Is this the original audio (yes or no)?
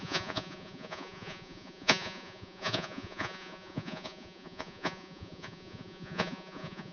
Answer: no